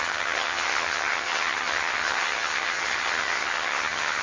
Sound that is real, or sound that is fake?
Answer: fake